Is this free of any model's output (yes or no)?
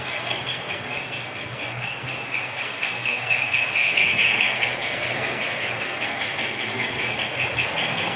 no